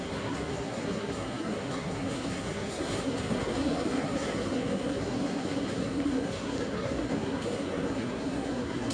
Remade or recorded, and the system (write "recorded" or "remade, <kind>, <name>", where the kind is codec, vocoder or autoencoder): remade, codec, SNAC